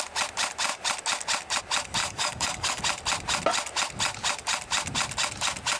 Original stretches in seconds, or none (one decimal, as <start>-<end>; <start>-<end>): 0.0-2.0; 2.8-5.8